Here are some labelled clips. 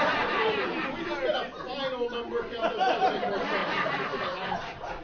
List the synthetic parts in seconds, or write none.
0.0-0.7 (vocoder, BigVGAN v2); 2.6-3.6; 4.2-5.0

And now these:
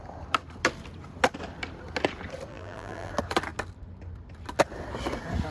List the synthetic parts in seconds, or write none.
2.5-3.1 (vocoder, BigVGAN v2)

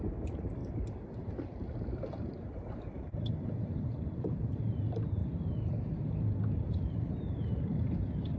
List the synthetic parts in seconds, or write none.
0.0-5.2 (vocoder, BigVGAN v2); 6.5-8.4